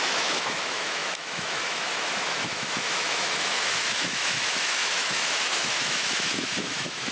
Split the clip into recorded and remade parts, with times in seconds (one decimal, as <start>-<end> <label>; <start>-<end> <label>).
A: 0.0-7.1 remade